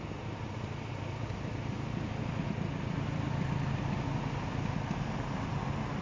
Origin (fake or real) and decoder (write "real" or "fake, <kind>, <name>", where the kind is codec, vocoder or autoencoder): real